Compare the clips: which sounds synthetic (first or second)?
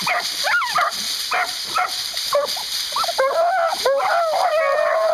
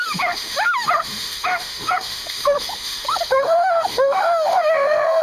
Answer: second